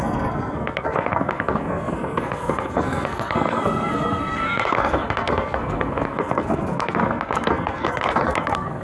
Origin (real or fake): fake